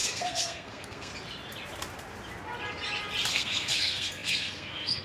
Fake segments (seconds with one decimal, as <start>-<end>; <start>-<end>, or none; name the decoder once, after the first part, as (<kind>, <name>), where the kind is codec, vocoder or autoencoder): 0.0-1.1 (codec, SNAC); 3.3-5.0